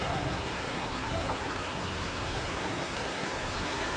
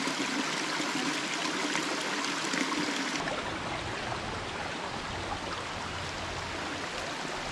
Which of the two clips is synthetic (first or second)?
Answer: first